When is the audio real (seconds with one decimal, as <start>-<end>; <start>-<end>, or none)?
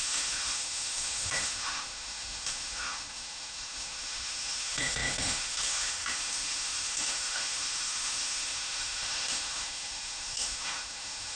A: none